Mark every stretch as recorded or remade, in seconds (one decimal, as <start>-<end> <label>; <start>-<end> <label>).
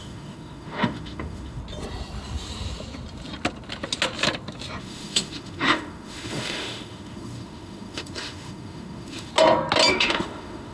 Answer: 0.0-1.6 remade; 1.6-4.8 recorded; 4.8-9.3 remade; 9.3-9.9 recorded; 9.9-10.7 remade